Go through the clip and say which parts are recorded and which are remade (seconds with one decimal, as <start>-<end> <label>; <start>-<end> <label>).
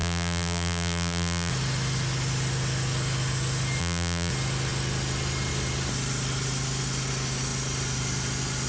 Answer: 0.0-1.5 remade; 1.5-3.8 recorded; 3.8-4.3 remade; 4.3-8.7 recorded